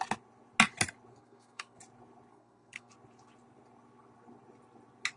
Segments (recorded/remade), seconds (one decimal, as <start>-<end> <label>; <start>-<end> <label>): 0.0-1.1 recorded; 1.1-1.8 remade; 1.8-2.3 recorded; 2.3-2.9 remade; 2.9-5.2 recorded